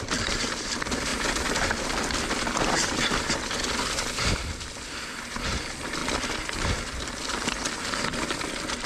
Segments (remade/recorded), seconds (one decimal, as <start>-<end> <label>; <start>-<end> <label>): 0.0-6.0 remade; 6.0-8.5 recorded; 8.5-8.9 remade